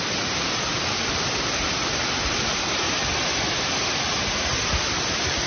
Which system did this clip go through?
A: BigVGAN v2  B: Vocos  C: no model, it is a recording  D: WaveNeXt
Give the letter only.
C